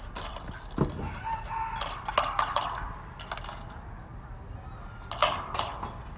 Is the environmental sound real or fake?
real